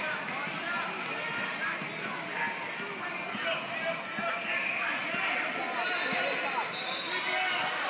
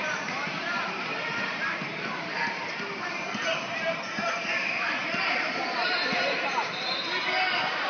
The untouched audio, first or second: first